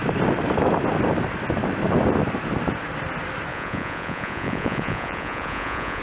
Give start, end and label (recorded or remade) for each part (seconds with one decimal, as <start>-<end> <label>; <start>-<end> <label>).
0.0-3.5 recorded; 3.5-6.0 remade

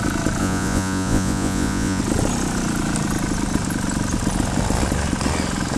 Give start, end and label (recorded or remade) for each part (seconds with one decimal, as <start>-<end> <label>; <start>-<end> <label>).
0.0-0.4 recorded; 0.4-2.0 remade; 2.0-5.8 recorded

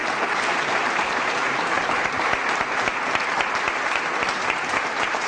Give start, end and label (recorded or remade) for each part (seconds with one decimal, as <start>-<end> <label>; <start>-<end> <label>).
0.0-3.2 remade; 3.2-5.3 recorded

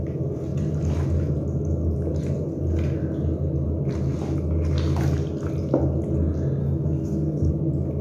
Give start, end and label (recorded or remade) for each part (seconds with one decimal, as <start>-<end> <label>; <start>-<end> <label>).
0.0-6.6 recorded; 6.6-7.5 remade; 7.5-8.0 recorded

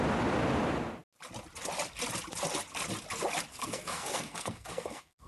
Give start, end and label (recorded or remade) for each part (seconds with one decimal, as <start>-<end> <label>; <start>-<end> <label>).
0.0-3.5 recorded; 3.5-5.3 remade

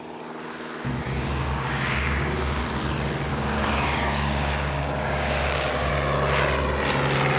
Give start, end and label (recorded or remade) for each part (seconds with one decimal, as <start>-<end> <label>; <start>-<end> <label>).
0.0-1.0 recorded; 1.0-2.6 remade; 2.6-3.3 recorded; 3.3-5.9 remade; 5.9-7.4 recorded

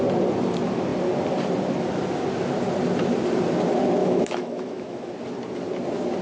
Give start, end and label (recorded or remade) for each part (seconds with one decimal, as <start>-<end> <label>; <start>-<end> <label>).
0.0-4.0 recorded; 4.0-5.1 remade; 5.1-6.2 recorded